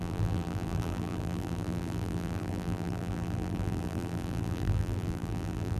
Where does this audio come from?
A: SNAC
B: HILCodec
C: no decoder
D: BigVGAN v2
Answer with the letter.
D